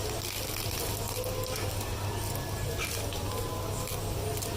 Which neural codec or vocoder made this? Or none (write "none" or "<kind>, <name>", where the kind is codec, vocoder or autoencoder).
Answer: none